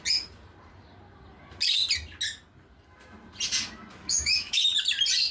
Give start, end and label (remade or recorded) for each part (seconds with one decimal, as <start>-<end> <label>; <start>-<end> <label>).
0.0-4.0 recorded; 4.0-4.6 remade; 4.6-5.3 recorded